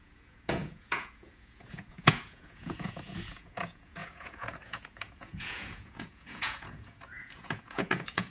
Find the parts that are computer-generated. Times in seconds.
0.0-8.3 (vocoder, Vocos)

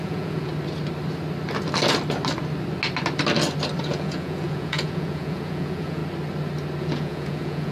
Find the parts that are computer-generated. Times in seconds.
0.0-0.5 (vocoder, Vocos); 3.8-6.0; 6.8-7.7